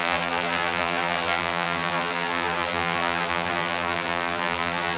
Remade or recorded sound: remade